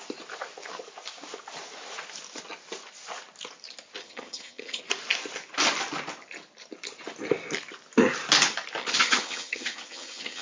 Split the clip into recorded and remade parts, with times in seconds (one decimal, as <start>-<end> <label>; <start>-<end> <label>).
0.0-4.0 recorded; 4.0-4.8 remade; 4.8-8.8 recorded; 8.8-10.4 remade